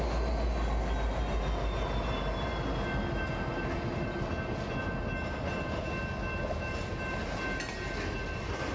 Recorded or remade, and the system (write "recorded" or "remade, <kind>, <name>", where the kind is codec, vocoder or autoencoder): recorded